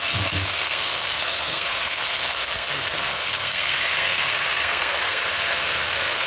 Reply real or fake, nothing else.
fake